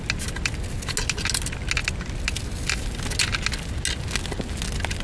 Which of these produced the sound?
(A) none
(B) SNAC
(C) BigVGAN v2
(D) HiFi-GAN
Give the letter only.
A